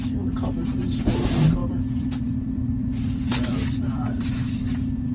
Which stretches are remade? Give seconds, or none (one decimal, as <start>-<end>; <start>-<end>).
0.6-1.1; 1.6-5.1